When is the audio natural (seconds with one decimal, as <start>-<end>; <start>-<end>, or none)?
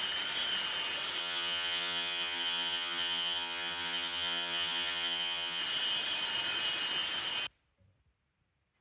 0.0-1.2; 5.6-8.8